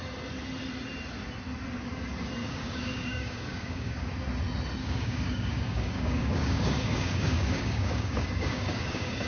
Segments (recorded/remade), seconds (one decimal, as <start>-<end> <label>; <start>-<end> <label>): 0.0-2.4 recorded; 2.4-4.1 remade; 4.1-4.8 recorded; 4.8-9.3 remade